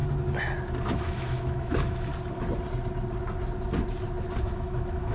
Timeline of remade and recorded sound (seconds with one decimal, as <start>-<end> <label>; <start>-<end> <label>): 0.0-1.0 recorded; 1.0-2.1 remade; 2.1-4.4 recorded; 4.4-5.1 remade